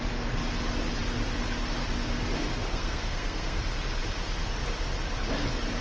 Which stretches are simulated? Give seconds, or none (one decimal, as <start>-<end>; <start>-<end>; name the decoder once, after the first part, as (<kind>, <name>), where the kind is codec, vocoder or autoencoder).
2.6-3.6 (codec, SNAC)